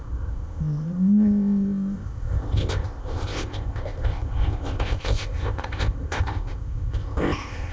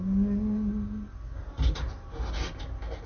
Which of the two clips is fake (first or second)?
first